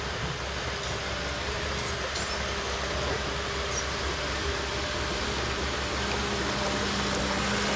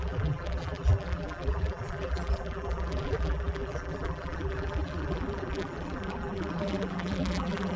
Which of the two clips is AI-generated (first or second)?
second